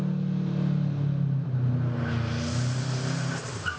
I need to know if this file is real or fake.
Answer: real